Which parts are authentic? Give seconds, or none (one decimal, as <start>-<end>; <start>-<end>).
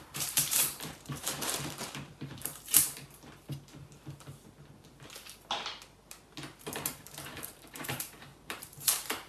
2.5-6.9